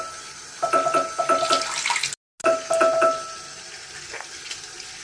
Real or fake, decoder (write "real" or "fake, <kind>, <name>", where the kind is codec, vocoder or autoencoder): real